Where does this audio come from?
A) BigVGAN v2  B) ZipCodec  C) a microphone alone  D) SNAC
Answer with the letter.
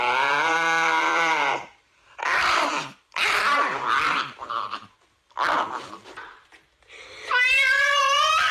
A